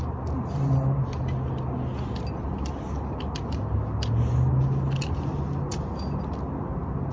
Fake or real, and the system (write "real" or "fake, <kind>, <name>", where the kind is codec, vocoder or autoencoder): real